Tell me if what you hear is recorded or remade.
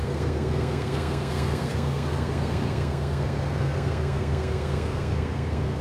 remade